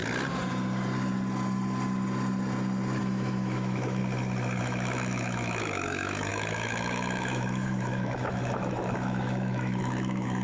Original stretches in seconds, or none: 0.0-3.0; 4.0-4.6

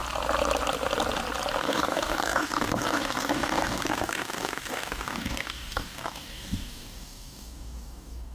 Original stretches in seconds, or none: 0.0-1.6

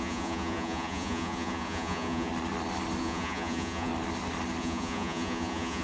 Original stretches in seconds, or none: 2.3-3.0; 3.9-4.6

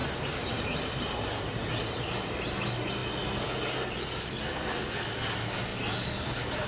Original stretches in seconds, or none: 2.5-5.7; 6.3-6.7

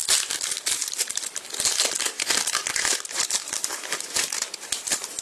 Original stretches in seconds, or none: 0.0-2.7

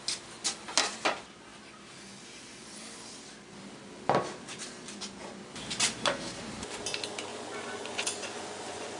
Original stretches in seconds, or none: 0.0-7.3

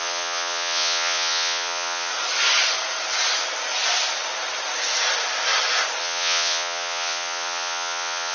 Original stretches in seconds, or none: 2.1-6.0